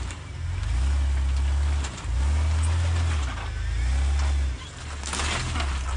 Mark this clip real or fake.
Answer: real